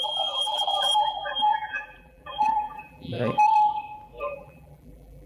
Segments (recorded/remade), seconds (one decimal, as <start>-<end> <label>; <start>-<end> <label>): 0.0-3.2 remade; 3.2-4.3 recorded; 4.3-5.3 remade